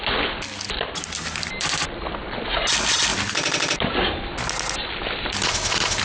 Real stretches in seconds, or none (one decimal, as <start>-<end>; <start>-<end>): 0.0-6.0